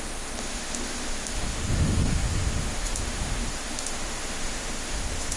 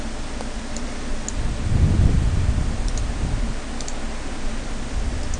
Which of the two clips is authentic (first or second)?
second